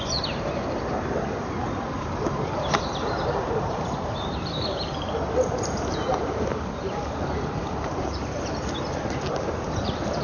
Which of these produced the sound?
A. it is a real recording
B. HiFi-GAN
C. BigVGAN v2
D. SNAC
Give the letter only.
C